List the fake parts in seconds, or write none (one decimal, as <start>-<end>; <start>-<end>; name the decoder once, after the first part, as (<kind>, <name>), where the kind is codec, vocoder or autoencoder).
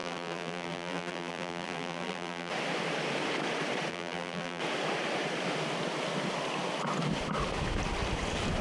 0.0-2.5 (vocoder, BigVGAN v2); 3.9-4.6